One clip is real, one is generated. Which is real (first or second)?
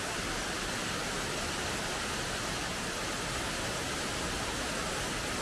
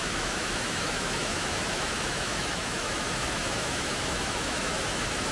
first